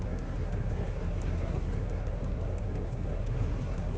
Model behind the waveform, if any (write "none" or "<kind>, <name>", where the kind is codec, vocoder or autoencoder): codec, SNAC